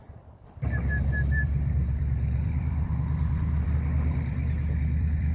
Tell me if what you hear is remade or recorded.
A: remade